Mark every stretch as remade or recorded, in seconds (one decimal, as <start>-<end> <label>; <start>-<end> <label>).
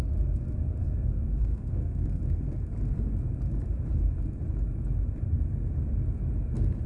0.0-0.8 recorded; 0.8-2.2 remade; 2.2-6.9 recorded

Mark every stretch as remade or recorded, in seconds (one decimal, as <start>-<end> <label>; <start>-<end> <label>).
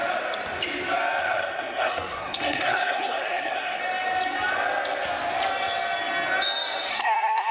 0.0-1.2 recorded; 1.2-3.8 remade; 3.8-6.9 recorded; 6.9-7.5 remade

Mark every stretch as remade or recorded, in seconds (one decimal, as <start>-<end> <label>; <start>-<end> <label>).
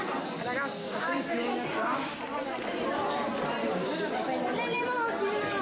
0.0-0.8 recorded; 0.8-2.2 remade; 2.2-3.6 recorded; 3.6-4.1 remade; 4.1-5.6 recorded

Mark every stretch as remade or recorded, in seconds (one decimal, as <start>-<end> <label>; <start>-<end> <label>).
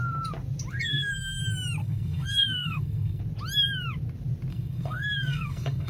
0.0-0.8 recorded; 0.8-1.4 remade; 1.4-1.8 recorded; 1.8-3.2 remade; 3.2-4.5 recorded; 4.5-5.9 remade